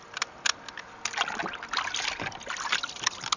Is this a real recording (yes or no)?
yes